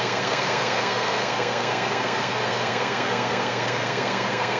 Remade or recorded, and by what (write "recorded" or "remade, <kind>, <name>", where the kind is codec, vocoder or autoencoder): remade, codec, SNAC